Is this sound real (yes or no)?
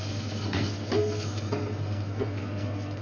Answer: no